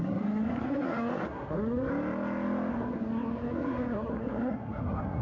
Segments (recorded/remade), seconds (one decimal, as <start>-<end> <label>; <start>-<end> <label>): 0.0-1.9 remade; 1.9-2.7 recorded; 2.7-5.2 remade